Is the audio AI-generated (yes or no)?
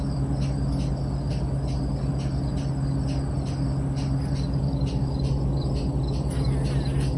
no